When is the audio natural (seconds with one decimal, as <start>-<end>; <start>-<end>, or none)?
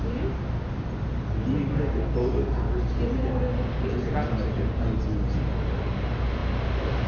0.0-7.1